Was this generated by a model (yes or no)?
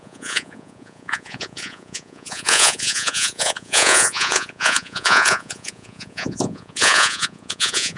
yes